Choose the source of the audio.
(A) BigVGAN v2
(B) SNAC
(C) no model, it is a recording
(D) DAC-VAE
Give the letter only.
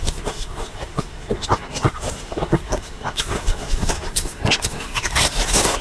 B